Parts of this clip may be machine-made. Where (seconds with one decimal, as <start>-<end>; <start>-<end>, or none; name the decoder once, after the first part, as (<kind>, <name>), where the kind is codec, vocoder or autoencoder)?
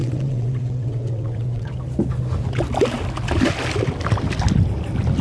0.0-1.7 (vocoder, WaveNeXt)